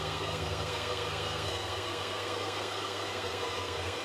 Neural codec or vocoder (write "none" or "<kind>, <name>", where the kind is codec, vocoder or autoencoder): codec, SNAC